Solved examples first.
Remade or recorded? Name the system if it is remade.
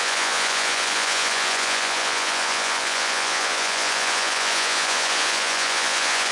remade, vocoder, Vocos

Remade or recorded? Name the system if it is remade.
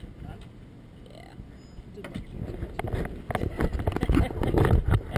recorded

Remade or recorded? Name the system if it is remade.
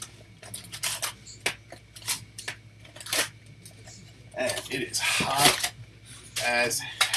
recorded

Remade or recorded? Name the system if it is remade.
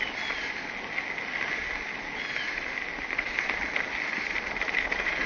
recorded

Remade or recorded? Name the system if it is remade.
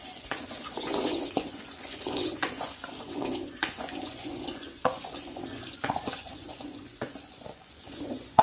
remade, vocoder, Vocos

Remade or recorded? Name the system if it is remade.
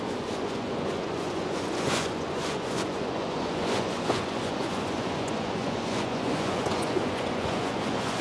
remade, vocoder, Vocos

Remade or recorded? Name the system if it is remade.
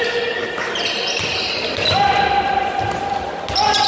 recorded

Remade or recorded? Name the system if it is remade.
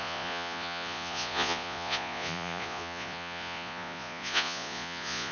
remade, vocoder, Vocos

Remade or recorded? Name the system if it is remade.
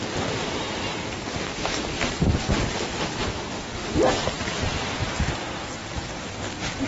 recorded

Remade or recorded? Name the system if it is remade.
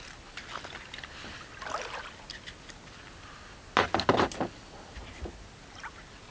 recorded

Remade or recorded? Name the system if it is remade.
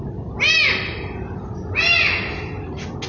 recorded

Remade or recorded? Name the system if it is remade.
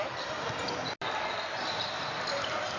recorded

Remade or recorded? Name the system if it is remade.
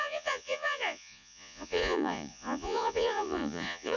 remade, vocoder, Vocos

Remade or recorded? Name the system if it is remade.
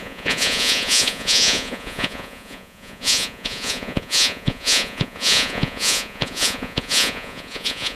remade, vocoder, Vocos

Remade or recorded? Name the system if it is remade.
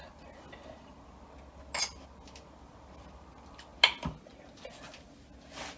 recorded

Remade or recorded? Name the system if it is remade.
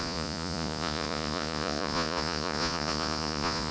remade, vocoder, Vocos